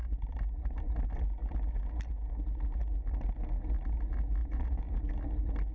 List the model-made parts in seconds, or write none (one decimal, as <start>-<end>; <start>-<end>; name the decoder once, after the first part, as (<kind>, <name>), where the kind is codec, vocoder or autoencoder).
4.4-5.0 (vocoder, Vocos)

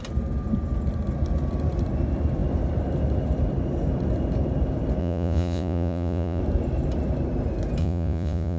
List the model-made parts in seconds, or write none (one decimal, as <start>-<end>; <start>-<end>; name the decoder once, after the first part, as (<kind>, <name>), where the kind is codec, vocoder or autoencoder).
5.0-6.4 (vocoder, Vocos); 7.8-8.6

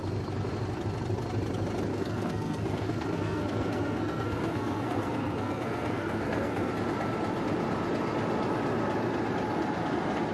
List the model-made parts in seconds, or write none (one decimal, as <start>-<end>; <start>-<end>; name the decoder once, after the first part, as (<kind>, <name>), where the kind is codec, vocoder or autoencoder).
1.9-6.7 (codec, SNAC)

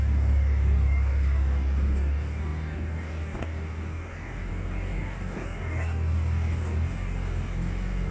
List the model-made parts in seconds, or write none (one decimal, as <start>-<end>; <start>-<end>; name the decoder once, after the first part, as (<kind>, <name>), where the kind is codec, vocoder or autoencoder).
0.0-8.1 (codec, DAC)

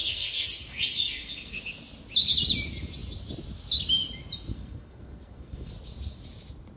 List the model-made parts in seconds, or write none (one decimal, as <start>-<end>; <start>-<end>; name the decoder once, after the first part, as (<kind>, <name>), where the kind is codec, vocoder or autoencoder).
0.0-1.6 (codec, SNAC); 4.5-5.7

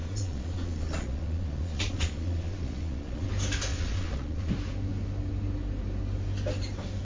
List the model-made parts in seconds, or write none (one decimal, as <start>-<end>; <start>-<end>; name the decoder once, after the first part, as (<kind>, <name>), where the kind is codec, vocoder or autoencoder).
0.0-3.3 (vocoder, Vocos); 3.7-4.5